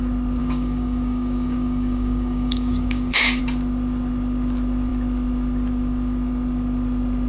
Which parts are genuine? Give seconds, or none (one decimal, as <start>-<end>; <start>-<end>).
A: 0.0-0.4; 3.4-7.3